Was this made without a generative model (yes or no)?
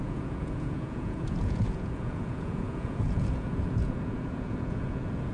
no